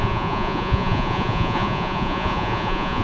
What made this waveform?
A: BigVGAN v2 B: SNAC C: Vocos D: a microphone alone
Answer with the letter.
C